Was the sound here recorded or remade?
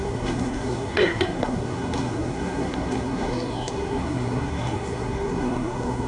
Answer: remade